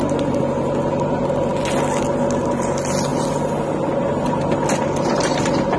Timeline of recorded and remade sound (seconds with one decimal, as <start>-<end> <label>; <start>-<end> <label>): 0.0-5.8 recorded